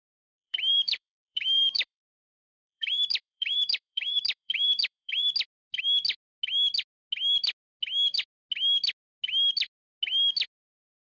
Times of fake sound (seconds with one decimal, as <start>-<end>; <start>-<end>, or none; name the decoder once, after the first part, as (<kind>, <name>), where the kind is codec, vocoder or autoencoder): 0.0-5.1 (vocoder, BigVGAN v2)